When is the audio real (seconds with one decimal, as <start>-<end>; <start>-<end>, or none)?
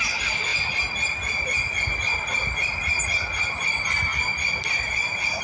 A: 0.0-5.4